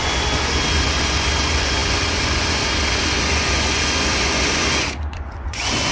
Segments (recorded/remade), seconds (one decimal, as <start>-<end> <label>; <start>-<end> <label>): 0.0-5.9 remade